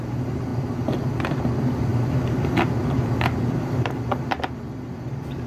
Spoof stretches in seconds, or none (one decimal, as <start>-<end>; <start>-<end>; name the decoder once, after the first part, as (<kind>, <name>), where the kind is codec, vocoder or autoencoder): none